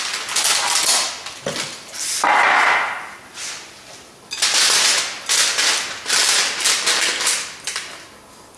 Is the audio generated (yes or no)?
no